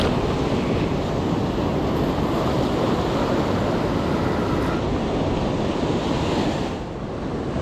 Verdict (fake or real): real